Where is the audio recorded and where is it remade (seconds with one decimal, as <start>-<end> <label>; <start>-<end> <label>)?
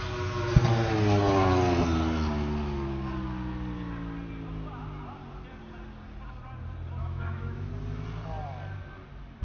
0.0-7.0 recorded; 7.0-7.7 remade; 7.7-9.4 recorded